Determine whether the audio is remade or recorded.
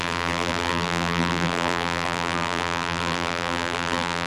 remade